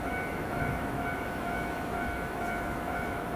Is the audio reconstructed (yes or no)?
yes